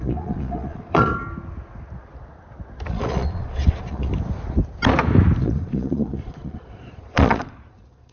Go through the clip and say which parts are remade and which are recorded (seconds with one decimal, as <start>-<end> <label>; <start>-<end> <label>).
0.0-1.1 remade; 1.1-2.9 recorded; 2.9-4.1 remade; 4.1-5.4 recorded; 5.4-8.1 remade

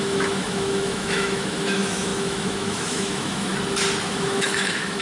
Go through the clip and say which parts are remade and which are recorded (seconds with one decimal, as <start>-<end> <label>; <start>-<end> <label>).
0.0-3.5 remade; 3.5-4.1 recorded; 4.1-5.0 remade

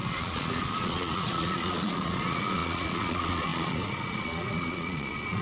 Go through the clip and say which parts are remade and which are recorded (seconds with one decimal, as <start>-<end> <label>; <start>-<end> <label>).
0.0-5.4 remade